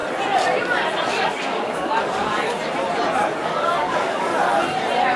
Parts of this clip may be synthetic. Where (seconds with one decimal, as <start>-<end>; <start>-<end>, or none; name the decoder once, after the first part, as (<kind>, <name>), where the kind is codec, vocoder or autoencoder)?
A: 1.1-2.3 (codec, DAC); 3.3-4.3